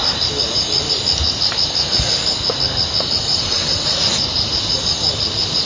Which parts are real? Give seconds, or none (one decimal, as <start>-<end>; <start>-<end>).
0.0-3.3; 4.0-5.7